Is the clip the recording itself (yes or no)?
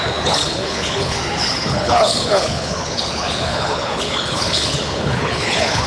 no